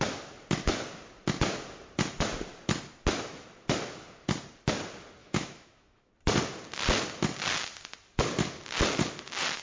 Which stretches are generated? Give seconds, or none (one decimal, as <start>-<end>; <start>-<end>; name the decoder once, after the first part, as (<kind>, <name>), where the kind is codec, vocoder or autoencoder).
5.2-6.1 (autoencoder, DAC-VAE)